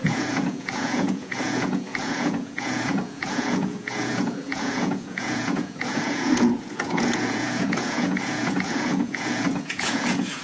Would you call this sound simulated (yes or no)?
yes